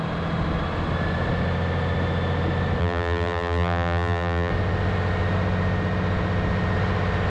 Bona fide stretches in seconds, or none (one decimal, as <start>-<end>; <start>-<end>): 0.0-2.8; 4.5-7.3